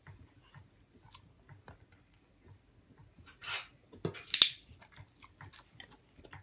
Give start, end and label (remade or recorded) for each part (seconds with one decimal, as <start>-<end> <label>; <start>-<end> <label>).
0.0-6.4 recorded